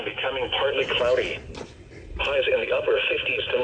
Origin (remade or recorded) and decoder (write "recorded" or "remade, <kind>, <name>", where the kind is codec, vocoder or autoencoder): recorded